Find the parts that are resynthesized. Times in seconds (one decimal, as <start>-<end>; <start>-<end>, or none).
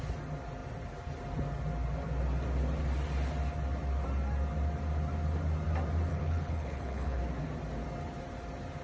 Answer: 6.1-7.2